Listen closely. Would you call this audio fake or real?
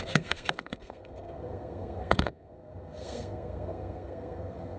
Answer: fake